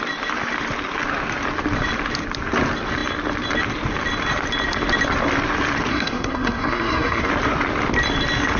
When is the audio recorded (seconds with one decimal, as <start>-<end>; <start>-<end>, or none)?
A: 0.0-5.9; 7.3-8.6